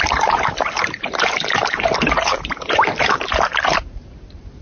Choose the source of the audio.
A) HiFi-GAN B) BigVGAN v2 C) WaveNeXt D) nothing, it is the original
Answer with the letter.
B